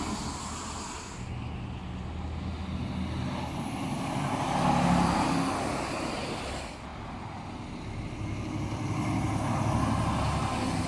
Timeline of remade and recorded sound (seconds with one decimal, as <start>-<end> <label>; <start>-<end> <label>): 0.0-10.9 recorded